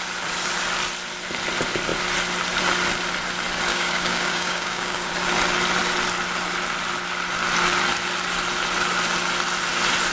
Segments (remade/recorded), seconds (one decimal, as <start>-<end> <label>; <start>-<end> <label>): 0.0-3.7 recorded; 3.7-5.1 remade; 5.1-10.1 recorded